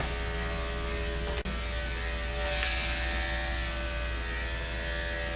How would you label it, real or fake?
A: real